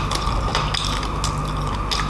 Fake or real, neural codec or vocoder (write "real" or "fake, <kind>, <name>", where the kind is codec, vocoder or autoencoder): real